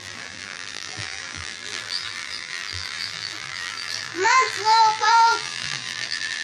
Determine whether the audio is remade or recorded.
remade